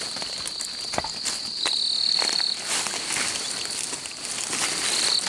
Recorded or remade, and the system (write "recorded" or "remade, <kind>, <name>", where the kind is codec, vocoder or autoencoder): recorded